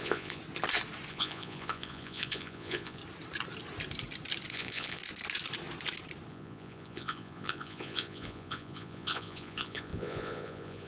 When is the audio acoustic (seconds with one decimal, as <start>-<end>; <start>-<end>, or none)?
0.4-1.1; 3.0-4.5; 5.0-6.3